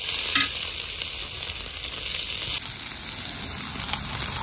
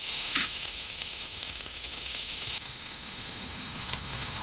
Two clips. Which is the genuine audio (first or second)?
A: first